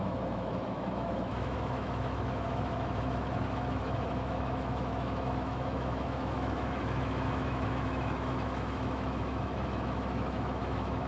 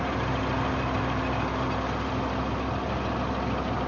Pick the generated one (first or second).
first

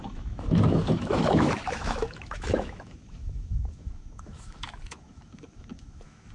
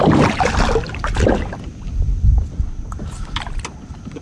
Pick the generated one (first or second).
first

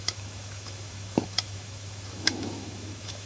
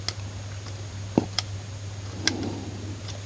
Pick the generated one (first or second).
first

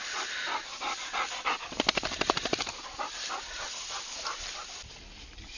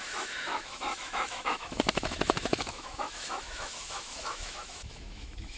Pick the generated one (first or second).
second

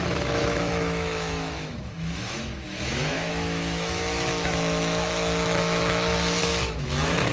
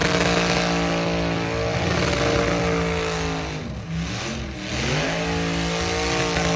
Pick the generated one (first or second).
first